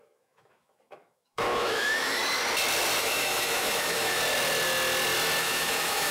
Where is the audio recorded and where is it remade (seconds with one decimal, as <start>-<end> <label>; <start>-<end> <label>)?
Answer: 0.0-2.2 remade; 2.2-3.0 recorded; 3.0-4.2 remade; 4.2-5.4 recorded; 5.4-6.1 remade